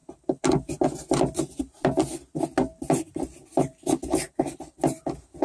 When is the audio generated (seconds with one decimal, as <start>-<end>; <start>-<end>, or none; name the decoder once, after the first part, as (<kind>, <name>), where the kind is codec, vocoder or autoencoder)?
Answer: none